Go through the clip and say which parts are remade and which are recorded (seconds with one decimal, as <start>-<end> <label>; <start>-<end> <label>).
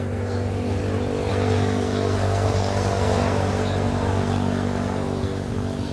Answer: 0.0-0.8 remade; 0.8-1.3 recorded; 1.3-5.9 remade